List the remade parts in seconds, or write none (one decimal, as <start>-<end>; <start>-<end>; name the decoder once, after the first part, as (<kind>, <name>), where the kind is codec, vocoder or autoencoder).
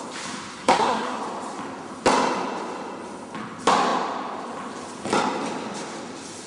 0.5-1.2 (codec, SNAC)